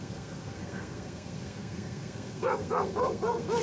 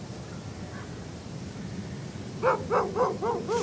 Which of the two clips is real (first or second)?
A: second